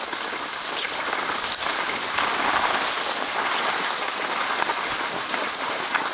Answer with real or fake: real